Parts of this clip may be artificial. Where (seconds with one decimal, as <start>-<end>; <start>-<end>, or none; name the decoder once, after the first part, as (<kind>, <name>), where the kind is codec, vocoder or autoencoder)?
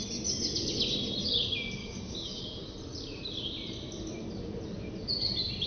1.8-2.4 (codec, DAC)